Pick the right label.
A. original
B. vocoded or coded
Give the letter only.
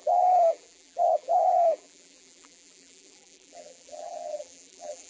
B